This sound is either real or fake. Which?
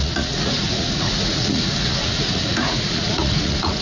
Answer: fake